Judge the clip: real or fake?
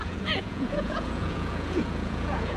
fake